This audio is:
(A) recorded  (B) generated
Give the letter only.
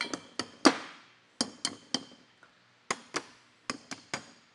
A